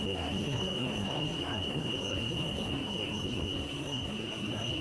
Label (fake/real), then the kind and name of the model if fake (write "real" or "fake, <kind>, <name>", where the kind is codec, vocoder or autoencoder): fake, codec, SNAC